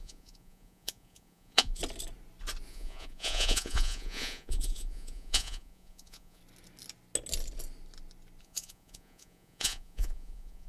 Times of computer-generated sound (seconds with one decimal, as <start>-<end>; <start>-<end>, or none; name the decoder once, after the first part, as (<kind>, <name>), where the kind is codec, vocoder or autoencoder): 0.0-1.8 (vocoder, Vocos); 2.7-6.4; 8.4-10.7